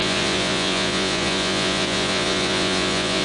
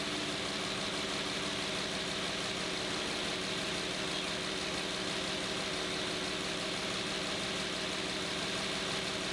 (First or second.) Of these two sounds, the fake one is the first